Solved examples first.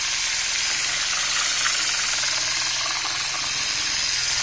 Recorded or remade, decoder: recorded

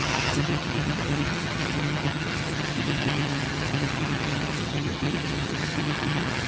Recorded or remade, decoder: remade, vocoder, HiFi-GAN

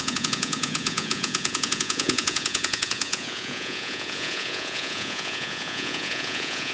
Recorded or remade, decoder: remade, vocoder, Vocos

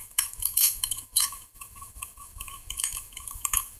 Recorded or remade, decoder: remade, autoencoder, DAC-VAE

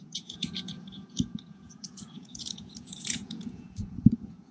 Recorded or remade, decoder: remade, vocoder, Vocos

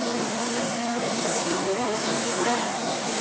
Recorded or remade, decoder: remade, codec, SNAC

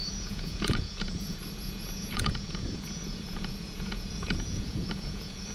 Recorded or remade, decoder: remade, vocoder, Vocos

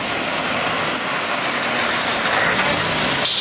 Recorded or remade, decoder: recorded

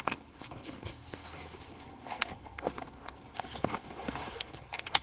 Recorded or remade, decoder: remade, codec, SNAC